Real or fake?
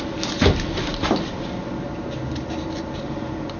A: real